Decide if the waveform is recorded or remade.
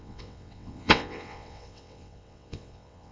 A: remade